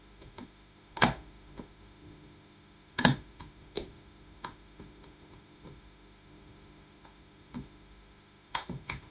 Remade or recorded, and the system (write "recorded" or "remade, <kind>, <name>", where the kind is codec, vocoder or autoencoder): remade, autoencoder, DAC-VAE